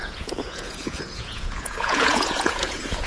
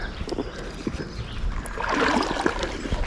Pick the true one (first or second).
second